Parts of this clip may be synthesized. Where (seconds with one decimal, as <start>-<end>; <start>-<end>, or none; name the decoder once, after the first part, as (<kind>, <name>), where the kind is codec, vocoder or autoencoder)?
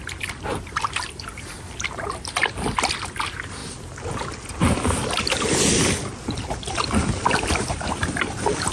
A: 0.0-3.6 (vocoder, BigVGAN v2); 4.5-8.7